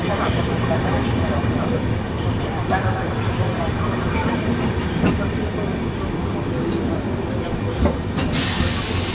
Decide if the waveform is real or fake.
real